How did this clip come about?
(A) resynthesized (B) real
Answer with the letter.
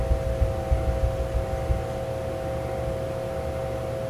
B